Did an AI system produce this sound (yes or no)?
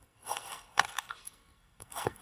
yes